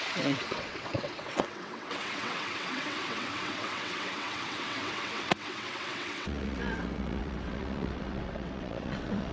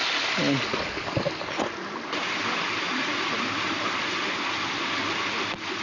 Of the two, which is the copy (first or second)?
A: first